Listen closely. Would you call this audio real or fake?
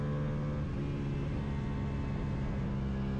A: real